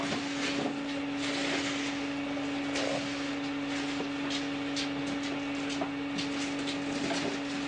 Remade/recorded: recorded